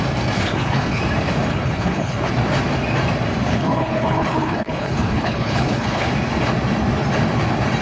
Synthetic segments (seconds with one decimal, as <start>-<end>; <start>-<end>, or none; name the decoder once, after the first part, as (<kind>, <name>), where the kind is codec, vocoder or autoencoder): 0.4-1.0 (codec, HILCodec); 1.5-2.3; 3.5-6.1